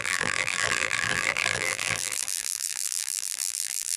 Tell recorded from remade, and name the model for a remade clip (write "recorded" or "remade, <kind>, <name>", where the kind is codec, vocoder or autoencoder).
remade, vocoder, BigVGAN v2